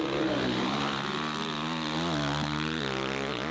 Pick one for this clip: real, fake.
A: real